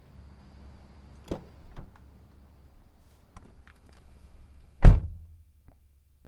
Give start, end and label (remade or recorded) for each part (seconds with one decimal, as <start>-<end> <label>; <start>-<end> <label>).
0.0-3.7 recorded; 3.7-6.3 remade

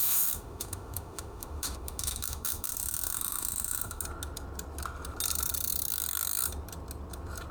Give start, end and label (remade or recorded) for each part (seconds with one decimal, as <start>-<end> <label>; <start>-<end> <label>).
0.0-4.0 remade; 4.0-7.5 recorded